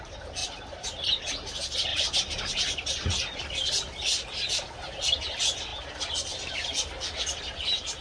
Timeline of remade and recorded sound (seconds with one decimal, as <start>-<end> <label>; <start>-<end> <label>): 0.0-0.4 recorded; 0.4-1.2 remade; 1.2-1.9 recorded; 1.9-3.4 remade; 3.4-8.0 recorded